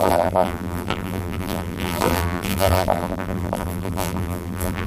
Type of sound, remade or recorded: remade